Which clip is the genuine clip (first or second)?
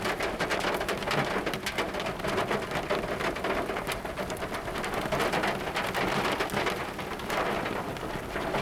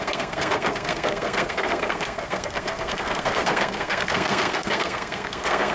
first